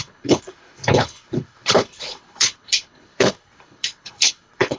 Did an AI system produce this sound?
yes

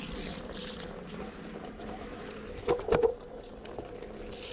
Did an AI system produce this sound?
no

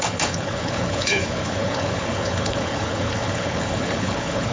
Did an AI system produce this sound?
yes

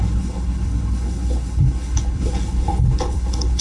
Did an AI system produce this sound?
yes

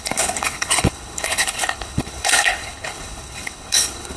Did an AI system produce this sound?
yes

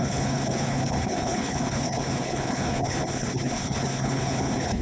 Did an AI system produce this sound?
yes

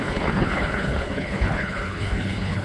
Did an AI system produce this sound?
yes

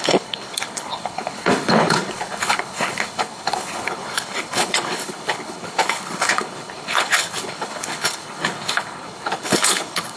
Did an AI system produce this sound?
yes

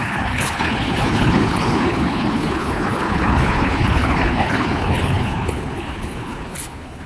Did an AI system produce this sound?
yes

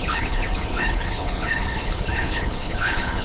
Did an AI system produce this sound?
yes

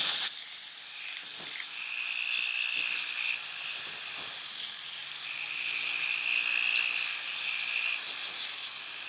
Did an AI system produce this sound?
no